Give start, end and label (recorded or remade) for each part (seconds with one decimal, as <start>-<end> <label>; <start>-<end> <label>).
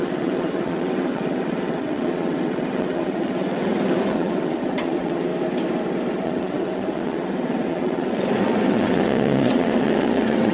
0.0-5.3 remade; 5.3-6.1 recorded; 6.1-10.5 remade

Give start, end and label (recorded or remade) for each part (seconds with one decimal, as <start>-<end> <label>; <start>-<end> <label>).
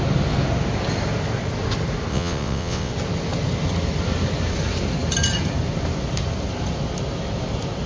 0.0-2.1 recorded; 2.1-2.9 remade; 2.9-7.9 recorded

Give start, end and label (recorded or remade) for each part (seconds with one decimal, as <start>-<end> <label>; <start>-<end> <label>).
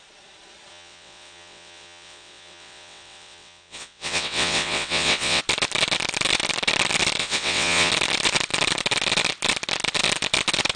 0.0-0.7 recorded; 0.7-5.4 remade; 5.4-7.2 recorded; 7.2-7.9 remade; 7.9-10.8 recorded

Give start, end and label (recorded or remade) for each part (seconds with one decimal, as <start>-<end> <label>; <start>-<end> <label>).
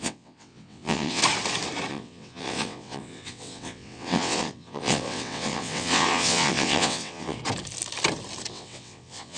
0.0-1.2 remade; 1.2-1.9 recorded; 1.9-7.4 remade; 7.4-8.5 recorded; 8.5-9.4 remade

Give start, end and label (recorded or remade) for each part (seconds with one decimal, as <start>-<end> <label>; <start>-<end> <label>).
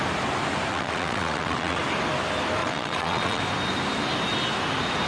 0.0-0.7 recorded; 0.7-1.8 remade; 1.8-2.6 recorded; 2.6-3.4 remade; 3.4-5.1 recorded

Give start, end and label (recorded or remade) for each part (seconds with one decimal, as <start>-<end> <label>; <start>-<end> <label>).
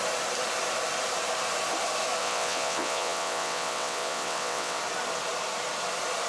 0.0-2.2 recorded; 2.2-4.8 remade; 4.8-6.3 recorded